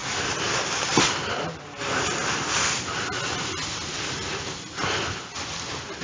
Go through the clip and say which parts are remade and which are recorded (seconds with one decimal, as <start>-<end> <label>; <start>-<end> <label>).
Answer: 0.0-6.0 recorded